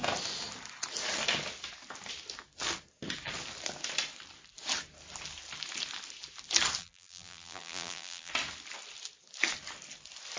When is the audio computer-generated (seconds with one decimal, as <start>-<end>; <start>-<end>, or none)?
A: 6.8-8.3